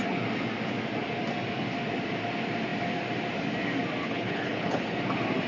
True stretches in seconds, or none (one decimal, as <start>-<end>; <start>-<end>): 0.0-4.0; 5.0-5.5